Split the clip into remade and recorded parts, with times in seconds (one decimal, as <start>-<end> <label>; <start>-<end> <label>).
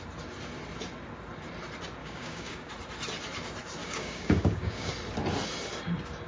0.0-2.0 recorded; 2.0-2.7 remade; 2.7-3.8 recorded; 3.8-4.9 remade; 4.9-6.3 recorded